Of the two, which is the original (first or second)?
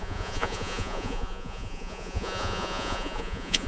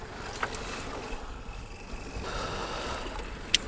second